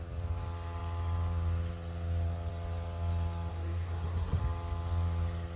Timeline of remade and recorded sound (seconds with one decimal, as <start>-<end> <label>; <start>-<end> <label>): 0.0-3.5 recorded; 3.5-4.4 remade; 4.4-5.6 recorded